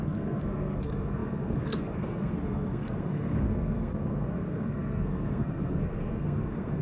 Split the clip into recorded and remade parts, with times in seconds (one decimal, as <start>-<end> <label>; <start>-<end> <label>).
0.0-6.8 remade